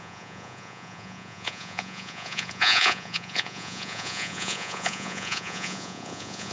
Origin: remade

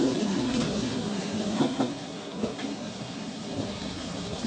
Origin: remade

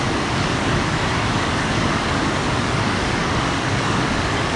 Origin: remade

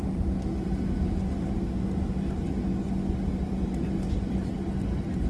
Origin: recorded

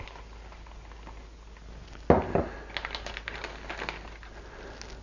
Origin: recorded